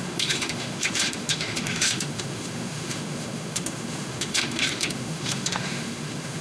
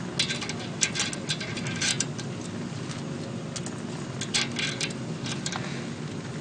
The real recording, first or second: second